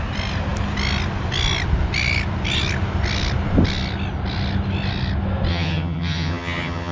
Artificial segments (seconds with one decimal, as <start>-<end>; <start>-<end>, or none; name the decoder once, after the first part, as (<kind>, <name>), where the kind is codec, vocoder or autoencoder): 5.5-6.9 (vocoder, HiFi-GAN)